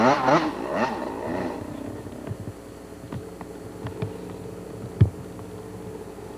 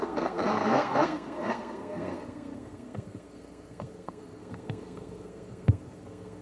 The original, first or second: first